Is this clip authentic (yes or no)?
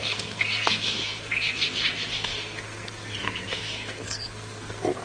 no